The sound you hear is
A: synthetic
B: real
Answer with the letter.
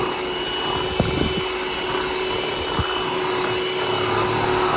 B